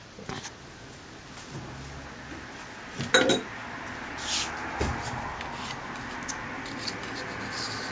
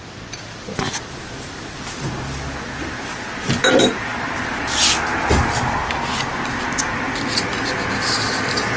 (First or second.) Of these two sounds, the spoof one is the second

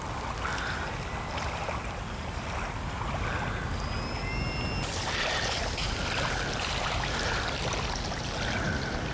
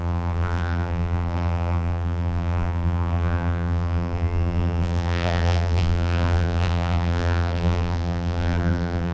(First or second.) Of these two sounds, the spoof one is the second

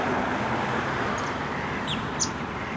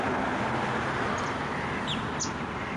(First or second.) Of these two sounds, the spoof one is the first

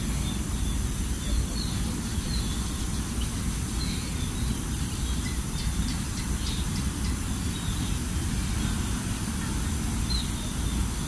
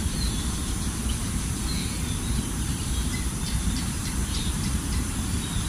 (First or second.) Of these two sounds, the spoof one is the second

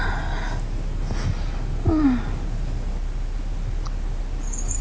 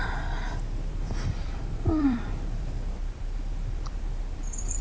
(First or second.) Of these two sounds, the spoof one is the second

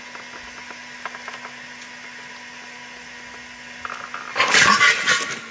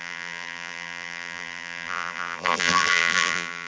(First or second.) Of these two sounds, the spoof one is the second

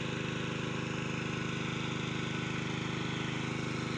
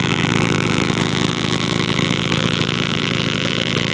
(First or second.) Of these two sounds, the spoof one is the second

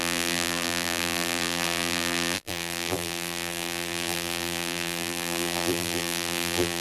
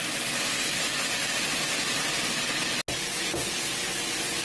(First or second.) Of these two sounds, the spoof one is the first